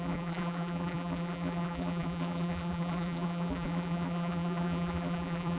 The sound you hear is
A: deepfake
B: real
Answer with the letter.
A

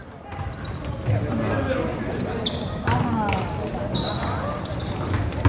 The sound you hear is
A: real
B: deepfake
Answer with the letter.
A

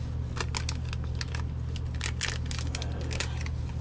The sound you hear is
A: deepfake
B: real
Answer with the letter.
B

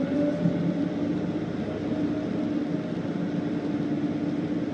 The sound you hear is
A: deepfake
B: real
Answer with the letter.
B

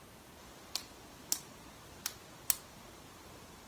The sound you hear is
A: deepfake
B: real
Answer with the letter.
B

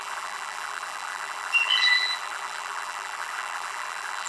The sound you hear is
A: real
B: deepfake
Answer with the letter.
B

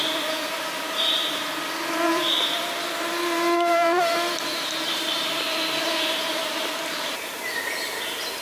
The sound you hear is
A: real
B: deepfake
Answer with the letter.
B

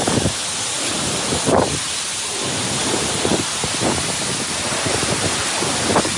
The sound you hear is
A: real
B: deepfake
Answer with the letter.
A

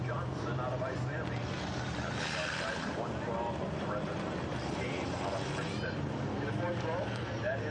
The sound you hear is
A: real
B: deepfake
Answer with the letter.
B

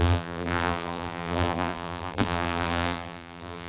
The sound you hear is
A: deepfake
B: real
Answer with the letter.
A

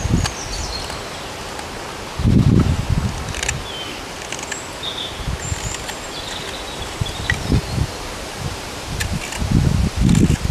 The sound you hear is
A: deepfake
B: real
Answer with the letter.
B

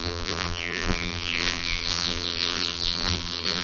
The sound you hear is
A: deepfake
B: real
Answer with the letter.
A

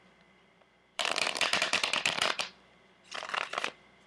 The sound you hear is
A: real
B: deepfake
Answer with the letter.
B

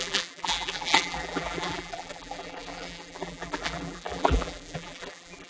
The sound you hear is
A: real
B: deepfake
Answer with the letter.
B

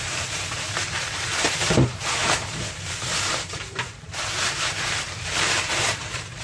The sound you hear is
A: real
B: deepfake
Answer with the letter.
B